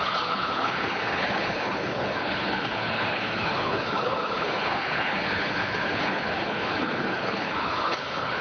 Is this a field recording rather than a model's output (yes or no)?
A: no